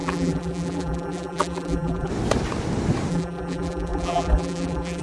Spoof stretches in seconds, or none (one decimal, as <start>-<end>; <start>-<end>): 0.0-2.1; 3.1-5.0